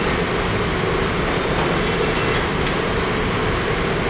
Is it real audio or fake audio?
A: real